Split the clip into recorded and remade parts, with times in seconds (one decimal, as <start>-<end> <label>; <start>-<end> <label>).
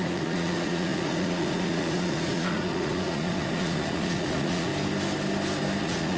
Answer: 0.0-4.7 remade; 4.7-5.8 recorded; 5.8-6.2 remade